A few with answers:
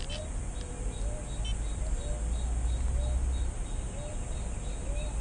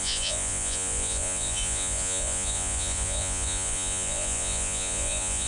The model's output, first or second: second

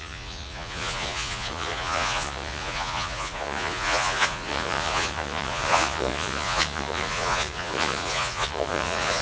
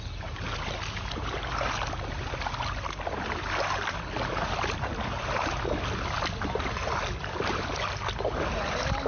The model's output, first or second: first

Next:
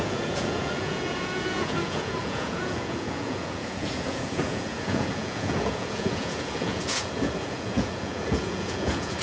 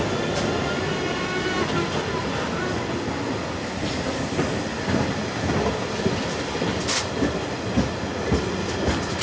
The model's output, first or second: first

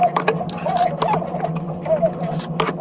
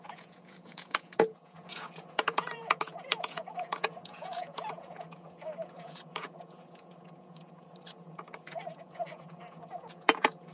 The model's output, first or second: second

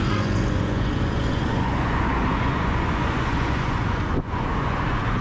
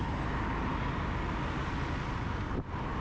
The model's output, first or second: first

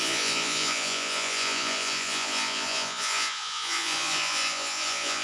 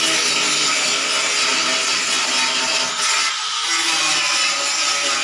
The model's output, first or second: first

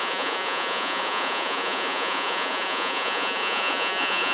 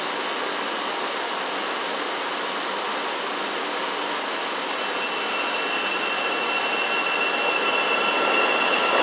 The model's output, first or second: first